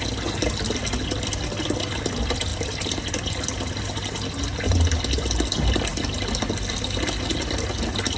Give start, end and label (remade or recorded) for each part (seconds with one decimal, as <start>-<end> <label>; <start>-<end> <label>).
0.0-8.2 recorded